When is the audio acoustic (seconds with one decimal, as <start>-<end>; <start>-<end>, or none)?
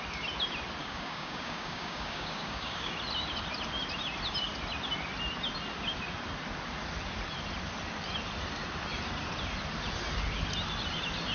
0.0-0.8; 2.9-11.3